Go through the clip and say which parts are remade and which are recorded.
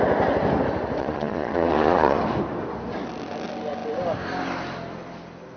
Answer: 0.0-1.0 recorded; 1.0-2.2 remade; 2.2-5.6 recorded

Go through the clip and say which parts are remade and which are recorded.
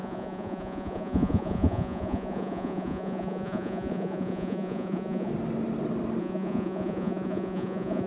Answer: 0.0-5.3 remade; 5.3-6.2 recorded; 6.2-8.1 remade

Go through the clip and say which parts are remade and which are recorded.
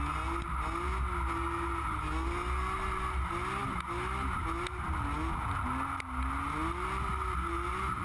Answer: 0.0-8.0 recorded